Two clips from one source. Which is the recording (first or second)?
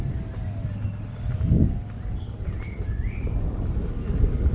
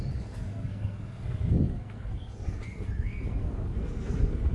first